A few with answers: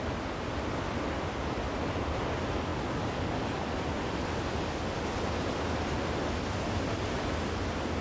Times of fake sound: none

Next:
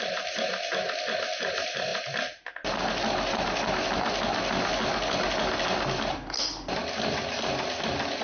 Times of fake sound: none

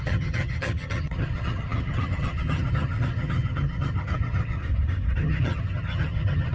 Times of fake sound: 0.0-4.6; 5.2-6.5